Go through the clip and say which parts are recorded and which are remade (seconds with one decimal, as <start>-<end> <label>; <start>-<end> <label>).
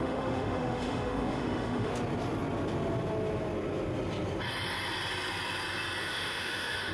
0.0-1.9 remade; 1.9-6.0 recorded; 6.0-6.9 remade